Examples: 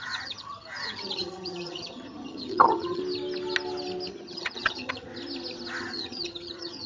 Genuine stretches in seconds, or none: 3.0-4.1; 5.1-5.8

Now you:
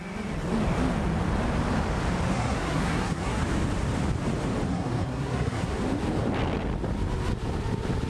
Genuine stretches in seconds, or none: 0.0-2.3; 3.4-4.7; 5.7-8.1

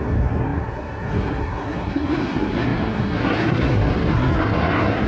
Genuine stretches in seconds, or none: none

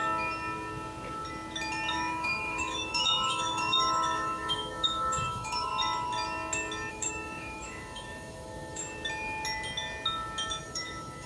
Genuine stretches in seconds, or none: 0.0-1.9; 5.7-6.9; 8.8-10.6

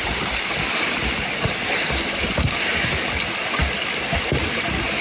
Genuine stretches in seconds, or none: 0.0-5.0

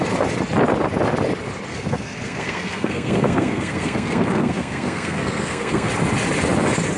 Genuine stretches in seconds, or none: 0.0-1.7; 5.9-7.0

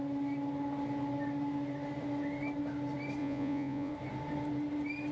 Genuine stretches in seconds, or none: 0.0-3.2; 3.9-5.1